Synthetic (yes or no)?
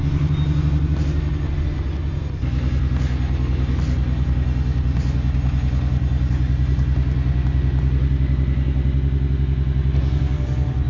no